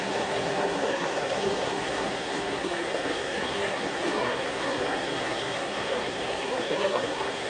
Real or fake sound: fake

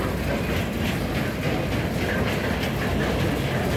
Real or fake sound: real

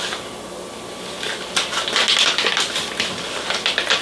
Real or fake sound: real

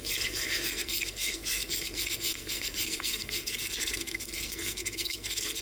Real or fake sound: fake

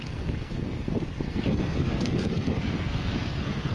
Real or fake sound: fake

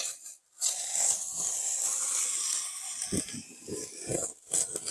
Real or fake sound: real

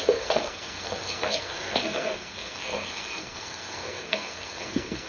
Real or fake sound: fake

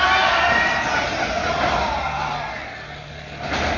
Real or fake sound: real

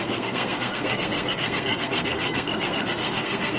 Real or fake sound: fake